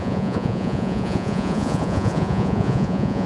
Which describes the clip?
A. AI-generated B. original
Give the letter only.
A